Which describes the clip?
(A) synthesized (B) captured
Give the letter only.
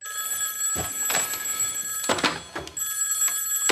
B